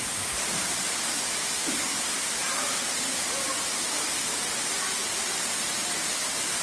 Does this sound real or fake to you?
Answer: real